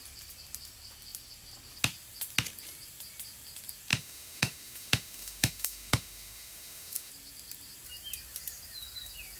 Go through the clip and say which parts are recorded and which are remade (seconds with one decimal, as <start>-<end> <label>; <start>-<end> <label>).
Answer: 0.0-3.9 recorded; 3.9-7.1 remade; 7.1-9.4 recorded